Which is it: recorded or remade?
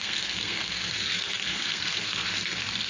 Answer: remade